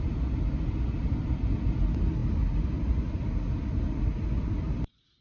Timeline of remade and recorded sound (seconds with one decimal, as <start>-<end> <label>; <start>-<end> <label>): 0.0-5.2 recorded